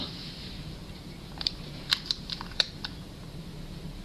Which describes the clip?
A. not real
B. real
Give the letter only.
A